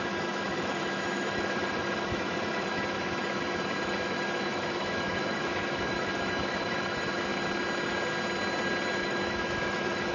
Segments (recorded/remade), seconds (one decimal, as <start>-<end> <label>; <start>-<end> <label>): 0.0-7.3 remade; 7.3-9.0 recorded; 9.0-10.1 remade